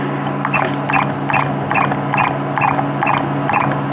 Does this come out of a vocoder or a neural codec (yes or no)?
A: no